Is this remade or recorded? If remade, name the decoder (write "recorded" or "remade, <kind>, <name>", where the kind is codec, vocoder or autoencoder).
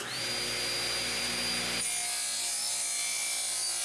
recorded